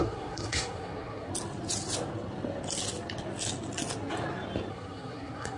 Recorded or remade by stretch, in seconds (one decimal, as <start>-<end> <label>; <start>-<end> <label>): 0.0-1.3 remade; 1.3-4.7 recorded; 4.7-5.6 remade